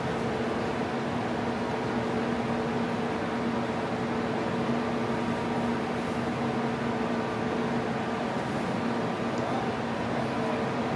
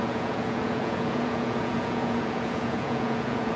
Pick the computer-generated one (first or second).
second